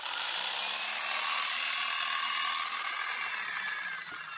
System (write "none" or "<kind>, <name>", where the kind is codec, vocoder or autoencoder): none